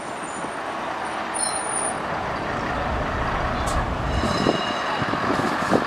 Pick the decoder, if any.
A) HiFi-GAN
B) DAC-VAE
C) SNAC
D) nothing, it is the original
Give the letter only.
D